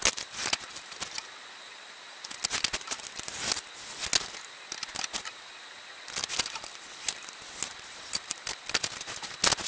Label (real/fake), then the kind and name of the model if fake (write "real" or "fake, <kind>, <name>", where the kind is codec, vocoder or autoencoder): real